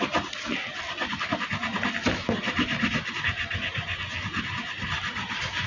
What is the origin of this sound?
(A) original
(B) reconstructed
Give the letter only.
A